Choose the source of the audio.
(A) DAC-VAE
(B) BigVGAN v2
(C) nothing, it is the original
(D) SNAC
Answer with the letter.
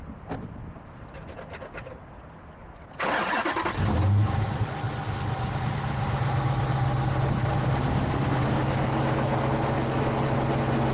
C